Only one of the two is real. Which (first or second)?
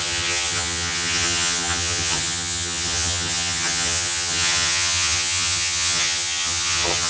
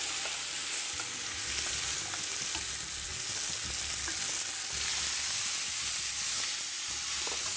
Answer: second